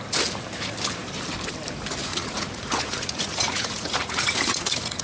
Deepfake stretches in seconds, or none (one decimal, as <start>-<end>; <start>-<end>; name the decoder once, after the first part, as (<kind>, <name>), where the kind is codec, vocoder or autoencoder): 2.0-5.0 (vocoder, Vocos)